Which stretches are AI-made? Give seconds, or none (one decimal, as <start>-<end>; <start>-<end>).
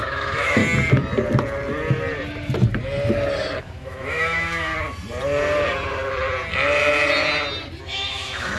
0.0-0.6; 3.6-4.7; 7.8-8.6